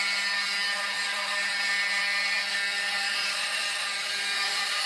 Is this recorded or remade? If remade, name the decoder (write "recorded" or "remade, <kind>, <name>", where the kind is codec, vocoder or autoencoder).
recorded